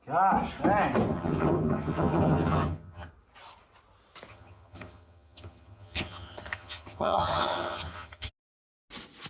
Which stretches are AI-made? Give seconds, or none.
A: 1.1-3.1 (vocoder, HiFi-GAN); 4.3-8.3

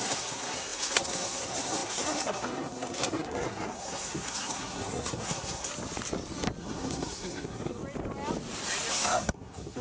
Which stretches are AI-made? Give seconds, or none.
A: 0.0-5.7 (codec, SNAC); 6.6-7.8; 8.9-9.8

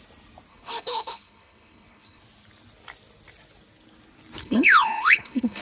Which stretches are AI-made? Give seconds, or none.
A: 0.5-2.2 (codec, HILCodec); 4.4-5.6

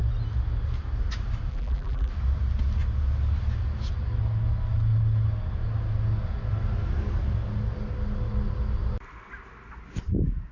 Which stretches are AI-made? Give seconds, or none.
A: 1.5-2.1 (vocoder, BigVGAN v2)